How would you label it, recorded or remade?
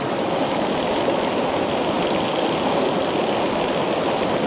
recorded